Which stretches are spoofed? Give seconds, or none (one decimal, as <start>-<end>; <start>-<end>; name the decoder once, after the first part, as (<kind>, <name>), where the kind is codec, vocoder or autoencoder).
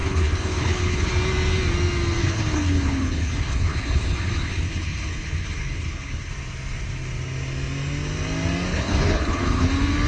0.0-1.1 (codec, HILCodec); 2.2-6.3; 8.7-9.7